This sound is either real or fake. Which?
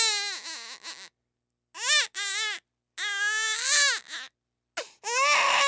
real